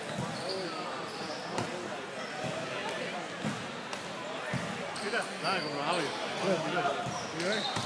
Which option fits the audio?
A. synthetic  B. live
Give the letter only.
B